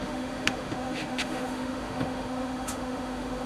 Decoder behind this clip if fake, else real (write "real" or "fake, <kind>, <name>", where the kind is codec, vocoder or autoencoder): fake, autoencoder, DAC-VAE